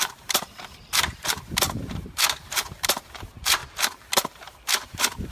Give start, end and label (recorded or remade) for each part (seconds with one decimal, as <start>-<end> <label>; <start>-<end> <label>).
0.0-3.6 remade; 3.6-4.3 recorded; 4.3-5.3 remade